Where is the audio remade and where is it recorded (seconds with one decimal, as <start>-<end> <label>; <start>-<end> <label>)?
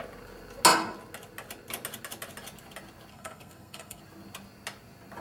0.0-3.1 recorded; 3.1-4.0 remade; 4.0-5.2 recorded